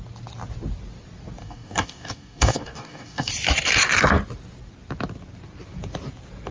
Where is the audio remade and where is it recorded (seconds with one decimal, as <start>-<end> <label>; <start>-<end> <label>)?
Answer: 0.0-1.4 recorded; 1.4-3.3 remade; 3.3-6.5 recorded